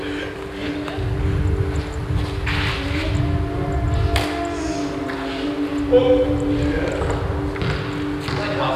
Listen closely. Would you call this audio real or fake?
real